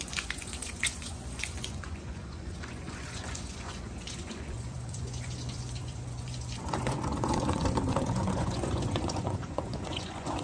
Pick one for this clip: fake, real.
fake